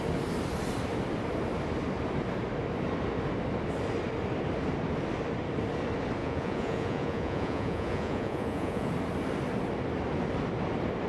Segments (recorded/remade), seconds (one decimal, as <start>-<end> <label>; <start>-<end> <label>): 0.0-6.2 recorded; 6.2-8.9 remade; 8.9-11.1 recorded